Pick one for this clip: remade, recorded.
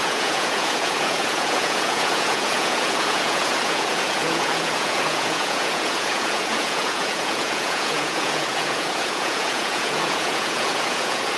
remade